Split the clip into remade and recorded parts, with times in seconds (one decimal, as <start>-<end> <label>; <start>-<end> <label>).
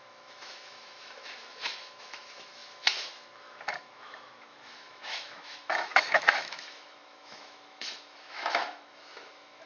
0.0-9.7 remade